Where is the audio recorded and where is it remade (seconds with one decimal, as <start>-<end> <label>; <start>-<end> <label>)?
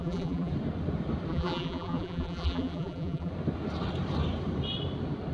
0.0-0.5 remade; 0.5-1.3 recorded; 1.3-3.3 remade; 3.3-5.3 recorded